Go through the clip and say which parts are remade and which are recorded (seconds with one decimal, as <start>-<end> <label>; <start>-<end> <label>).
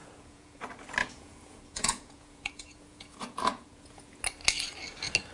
0.0-0.6 remade; 0.6-1.0 recorded; 1.0-4.2 remade; 4.2-5.3 recorded